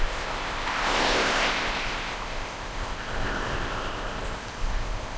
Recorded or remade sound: remade